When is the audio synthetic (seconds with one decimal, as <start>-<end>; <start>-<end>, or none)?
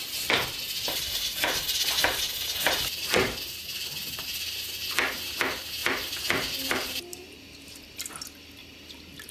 5.8-8.0; 8.6-9.3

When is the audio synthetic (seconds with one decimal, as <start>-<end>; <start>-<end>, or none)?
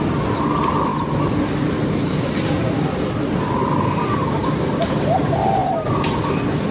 none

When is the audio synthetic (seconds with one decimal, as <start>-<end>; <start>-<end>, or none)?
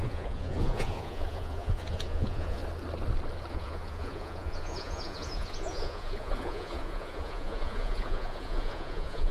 0.0-2.6; 3.5-9.3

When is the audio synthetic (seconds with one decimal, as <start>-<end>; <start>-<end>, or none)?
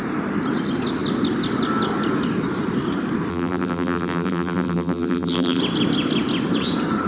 3.3-5.6